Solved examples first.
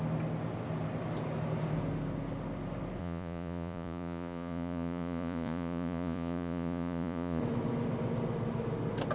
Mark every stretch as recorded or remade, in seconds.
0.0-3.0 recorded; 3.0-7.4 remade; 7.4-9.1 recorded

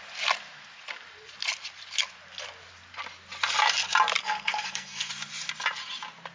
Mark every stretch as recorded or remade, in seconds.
0.0-4.2 recorded; 4.2-5.1 remade; 5.1-6.3 recorded